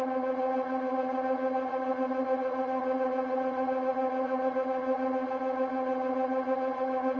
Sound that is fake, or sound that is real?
fake